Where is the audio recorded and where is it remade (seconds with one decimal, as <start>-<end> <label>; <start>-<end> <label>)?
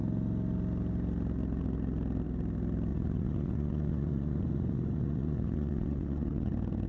0.0-2.9 recorded; 2.9-6.5 remade; 6.5-6.9 recorded